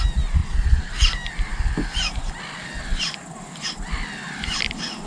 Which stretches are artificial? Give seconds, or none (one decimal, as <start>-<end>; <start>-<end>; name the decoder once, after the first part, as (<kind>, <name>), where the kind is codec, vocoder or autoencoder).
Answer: 0.4-0.9 (vocoder, Vocos)